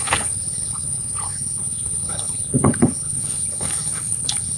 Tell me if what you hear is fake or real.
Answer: fake